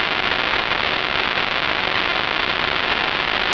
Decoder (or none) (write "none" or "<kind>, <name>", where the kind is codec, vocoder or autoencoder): none